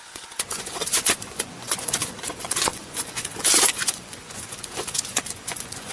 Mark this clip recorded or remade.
remade